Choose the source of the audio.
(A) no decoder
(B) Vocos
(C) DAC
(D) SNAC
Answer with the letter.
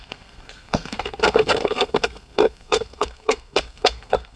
D